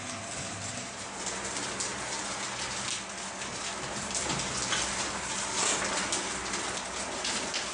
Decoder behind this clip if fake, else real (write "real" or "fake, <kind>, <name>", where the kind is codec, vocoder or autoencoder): real